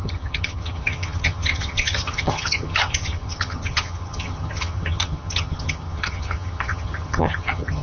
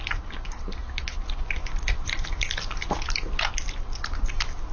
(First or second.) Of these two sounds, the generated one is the first